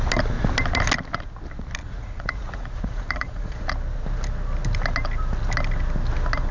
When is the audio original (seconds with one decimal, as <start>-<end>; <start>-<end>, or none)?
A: 0.0-1.8; 3.7-6.5